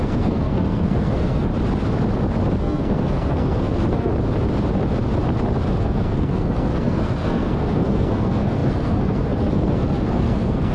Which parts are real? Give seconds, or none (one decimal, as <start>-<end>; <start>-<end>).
1.5-2.6; 4.1-5.8

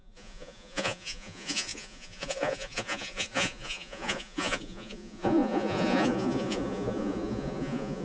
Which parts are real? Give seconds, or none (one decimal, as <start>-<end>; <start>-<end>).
none

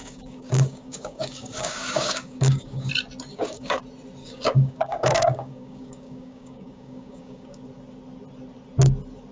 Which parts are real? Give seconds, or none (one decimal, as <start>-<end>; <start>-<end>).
2.9-3.3; 3.8-4.2; 7.6-9.3

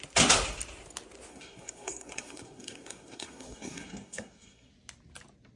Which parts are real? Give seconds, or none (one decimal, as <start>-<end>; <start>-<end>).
0.0-1.3; 4.7-5.6

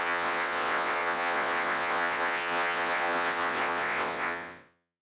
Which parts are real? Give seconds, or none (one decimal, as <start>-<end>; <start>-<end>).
none

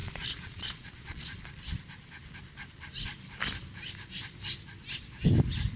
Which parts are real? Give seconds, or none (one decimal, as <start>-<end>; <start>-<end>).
1.4-5.8

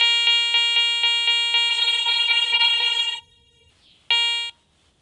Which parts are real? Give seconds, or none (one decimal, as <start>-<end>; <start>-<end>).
0.0-1.7; 3.7-5.0

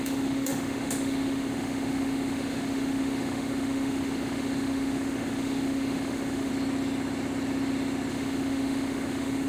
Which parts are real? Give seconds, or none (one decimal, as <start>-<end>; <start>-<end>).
6.5-8.1